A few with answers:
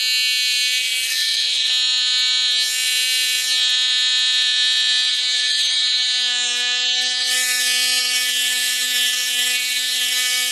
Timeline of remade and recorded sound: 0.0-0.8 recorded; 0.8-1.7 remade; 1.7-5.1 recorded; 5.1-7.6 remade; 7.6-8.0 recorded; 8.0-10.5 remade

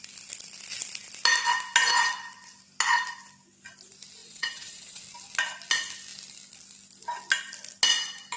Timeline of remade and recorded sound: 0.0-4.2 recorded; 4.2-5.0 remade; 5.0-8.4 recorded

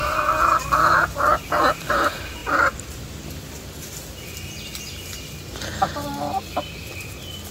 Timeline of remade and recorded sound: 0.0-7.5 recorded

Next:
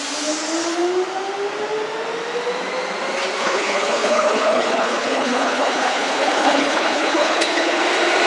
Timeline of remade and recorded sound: 0.0-3.4 recorded; 3.4-7.8 remade; 7.8-8.3 recorded

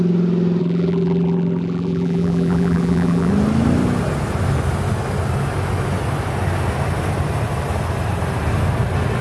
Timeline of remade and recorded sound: 0.0-0.6 recorded; 0.6-3.3 remade; 3.3-9.2 recorded

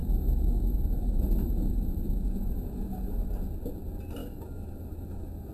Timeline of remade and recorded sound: 0.0-3.3 remade; 3.3-4.2 recorded; 4.2-5.5 remade